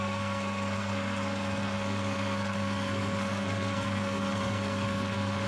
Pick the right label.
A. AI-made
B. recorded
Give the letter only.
A